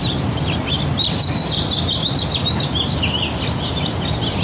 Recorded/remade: recorded